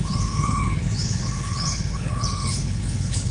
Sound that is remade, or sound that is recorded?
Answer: remade